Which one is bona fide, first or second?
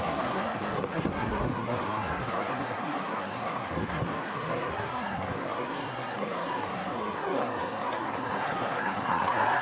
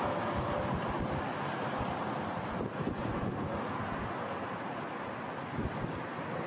second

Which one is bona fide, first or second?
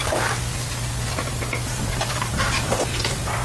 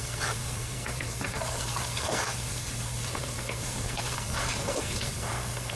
first